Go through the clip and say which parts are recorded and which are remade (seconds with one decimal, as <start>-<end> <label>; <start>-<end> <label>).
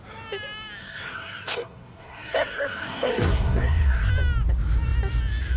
0.0-0.8 recorded; 0.8-4.1 remade; 4.1-5.6 recorded